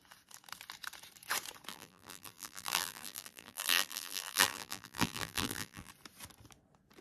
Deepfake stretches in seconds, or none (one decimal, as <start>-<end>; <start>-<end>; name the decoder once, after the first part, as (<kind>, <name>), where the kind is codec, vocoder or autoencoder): 1.7-5.9 (vocoder, BigVGAN v2)